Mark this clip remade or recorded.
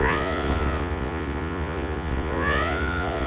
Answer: remade